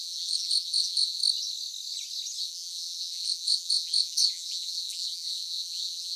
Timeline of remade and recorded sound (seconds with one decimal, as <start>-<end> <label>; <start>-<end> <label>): 0.0-1.2 remade; 1.2-2.4 recorded; 2.4-6.2 remade